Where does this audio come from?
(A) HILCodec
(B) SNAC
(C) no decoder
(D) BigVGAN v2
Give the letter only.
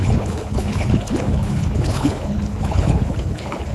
A